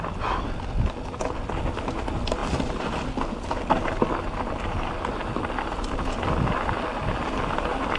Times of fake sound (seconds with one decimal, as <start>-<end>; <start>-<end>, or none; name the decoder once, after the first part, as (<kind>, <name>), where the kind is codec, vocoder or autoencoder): none

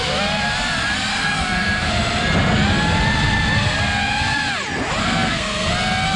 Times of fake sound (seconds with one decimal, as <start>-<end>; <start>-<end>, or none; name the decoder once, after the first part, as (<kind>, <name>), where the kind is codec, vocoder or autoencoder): 1.1-1.9 (codec, SNAC); 5.0-5.7

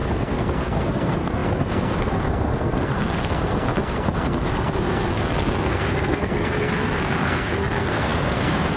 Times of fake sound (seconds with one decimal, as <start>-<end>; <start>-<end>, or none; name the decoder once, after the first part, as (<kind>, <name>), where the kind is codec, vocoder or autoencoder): 0.0-8.8 (codec, SNAC)

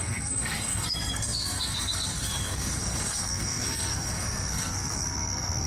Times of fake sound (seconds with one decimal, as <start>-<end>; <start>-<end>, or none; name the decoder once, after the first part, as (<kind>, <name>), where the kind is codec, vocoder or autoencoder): 0.0-5.7 (codec, SNAC)